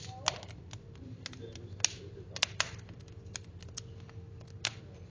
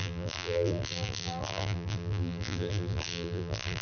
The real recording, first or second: first